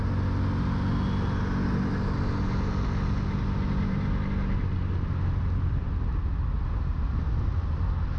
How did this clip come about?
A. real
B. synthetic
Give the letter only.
A